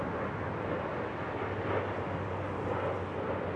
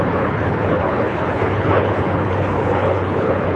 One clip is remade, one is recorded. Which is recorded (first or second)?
first